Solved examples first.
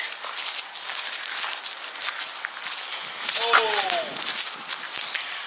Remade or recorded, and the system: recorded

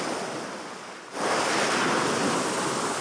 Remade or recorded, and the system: recorded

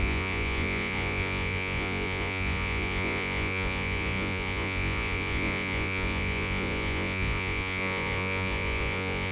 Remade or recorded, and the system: remade, vocoder, Vocos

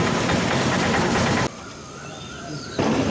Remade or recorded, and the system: recorded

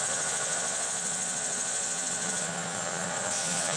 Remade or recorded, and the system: remade, vocoder, Vocos